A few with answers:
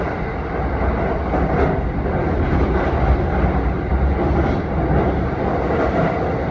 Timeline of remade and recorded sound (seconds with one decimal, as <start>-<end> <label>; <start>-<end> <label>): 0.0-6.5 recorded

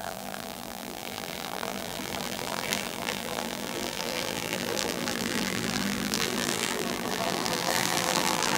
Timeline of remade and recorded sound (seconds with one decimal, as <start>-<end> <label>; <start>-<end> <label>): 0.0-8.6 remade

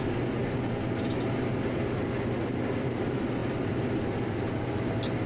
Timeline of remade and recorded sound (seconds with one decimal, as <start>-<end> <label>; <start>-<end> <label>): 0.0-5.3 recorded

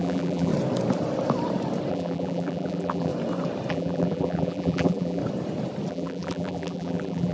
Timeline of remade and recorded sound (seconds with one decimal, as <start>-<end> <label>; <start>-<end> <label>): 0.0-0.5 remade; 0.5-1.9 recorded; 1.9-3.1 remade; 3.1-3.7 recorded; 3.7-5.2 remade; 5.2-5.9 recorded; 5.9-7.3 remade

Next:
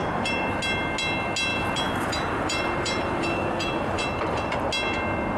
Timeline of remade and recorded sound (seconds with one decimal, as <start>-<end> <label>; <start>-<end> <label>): 0.0-0.6 remade; 0.6-1.5 recorded; 1.5-4.7 remade; 4.7-5.4 recorded

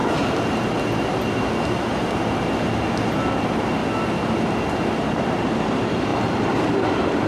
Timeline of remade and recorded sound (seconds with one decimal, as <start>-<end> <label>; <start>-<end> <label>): 0.0-3.4 recorded; 3.4-3.8 remade; 3.8-5.3 recorded; 5.3-7.3 remade